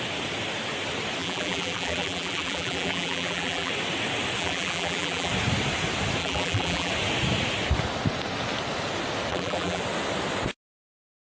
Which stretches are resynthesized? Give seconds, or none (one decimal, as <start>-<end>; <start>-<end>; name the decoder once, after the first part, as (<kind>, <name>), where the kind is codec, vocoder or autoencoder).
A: 1.2-3.7 (vocoder, BigVGAN v2); 4.4-5.3; 6.2-6.9; 9.3-9.8